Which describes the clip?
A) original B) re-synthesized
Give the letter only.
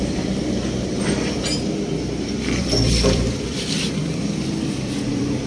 B